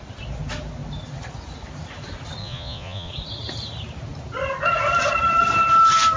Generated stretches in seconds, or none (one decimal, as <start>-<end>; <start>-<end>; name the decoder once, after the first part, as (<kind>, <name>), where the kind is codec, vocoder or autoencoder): 2.4-3.1 (vocoder, Vocos)